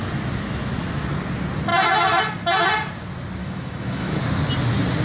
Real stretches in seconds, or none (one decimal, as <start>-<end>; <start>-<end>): 0.0-3.4; 4.2-5.0